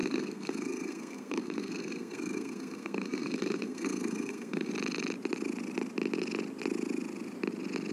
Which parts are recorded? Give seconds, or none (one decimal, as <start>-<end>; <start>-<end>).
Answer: 4.7-7.9